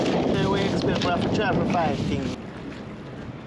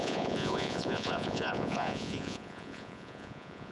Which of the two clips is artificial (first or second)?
second